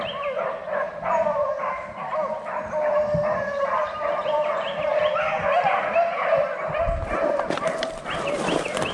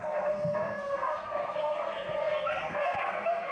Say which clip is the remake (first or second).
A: second